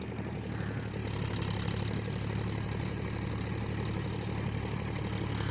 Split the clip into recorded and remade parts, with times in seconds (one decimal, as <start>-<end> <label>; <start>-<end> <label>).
0.0-5.5 recorded